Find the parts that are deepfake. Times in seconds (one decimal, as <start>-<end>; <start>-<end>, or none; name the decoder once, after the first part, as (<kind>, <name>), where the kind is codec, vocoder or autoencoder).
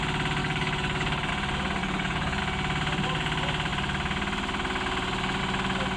0.4-1.3 (codec, DAC); 1.8-2.4